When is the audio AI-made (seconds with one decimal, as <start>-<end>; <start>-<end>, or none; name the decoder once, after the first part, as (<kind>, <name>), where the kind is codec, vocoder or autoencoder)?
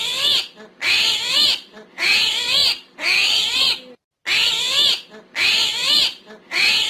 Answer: none